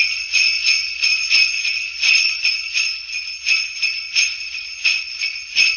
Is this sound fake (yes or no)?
no